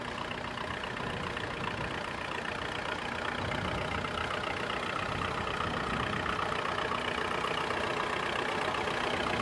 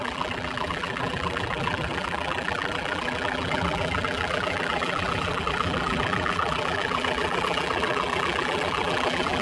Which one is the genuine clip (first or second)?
first